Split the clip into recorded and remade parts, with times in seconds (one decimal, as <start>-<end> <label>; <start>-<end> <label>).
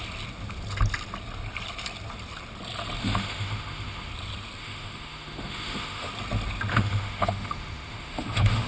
0.0-3.0 recorded; 3.0-4.1 remade; 4.1-4.6 recorded; 4.6-6.1 remade; 6.1-6.7 recorded; 6.7-8.7 remade